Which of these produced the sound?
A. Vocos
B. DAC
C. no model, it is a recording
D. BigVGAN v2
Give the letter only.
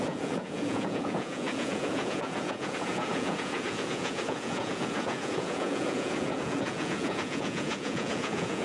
A